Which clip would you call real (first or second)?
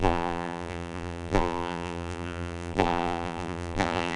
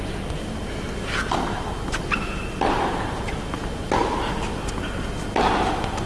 second